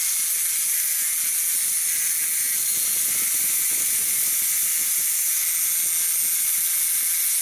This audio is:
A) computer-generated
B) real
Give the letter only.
B